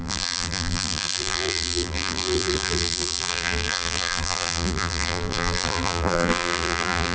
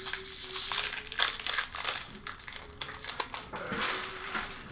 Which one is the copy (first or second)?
first